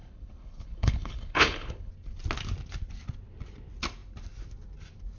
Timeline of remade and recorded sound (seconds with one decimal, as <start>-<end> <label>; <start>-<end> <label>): 0.0-1.9 remade; 1.9-5.2 recorded